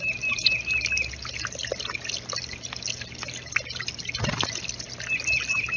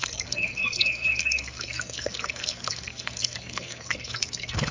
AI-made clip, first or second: second